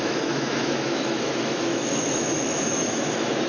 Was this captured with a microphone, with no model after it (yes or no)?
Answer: no